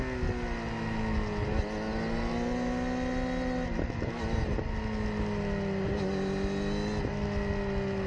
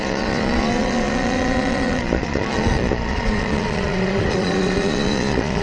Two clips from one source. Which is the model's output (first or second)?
second